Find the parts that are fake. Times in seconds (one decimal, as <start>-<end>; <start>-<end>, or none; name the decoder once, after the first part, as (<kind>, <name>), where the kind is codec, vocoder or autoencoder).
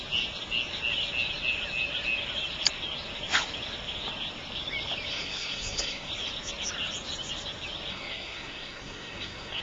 5.1-6.1 (codec, SNAC); 7.9-9.6